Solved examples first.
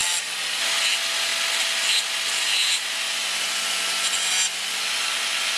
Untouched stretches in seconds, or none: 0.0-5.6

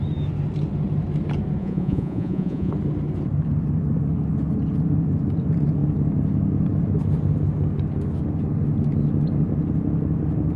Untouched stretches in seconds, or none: 0.0-1.6; 2.7-10.6

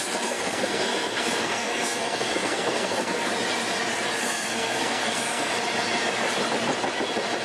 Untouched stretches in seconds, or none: 3.3-4.2; 5.5-7.4

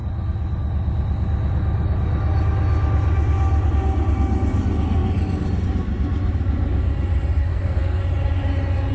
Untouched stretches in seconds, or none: 0.0-7.4; 8.0-8.9

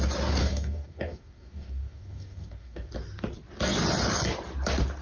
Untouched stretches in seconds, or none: 0.0-0.4; 2.9-5.0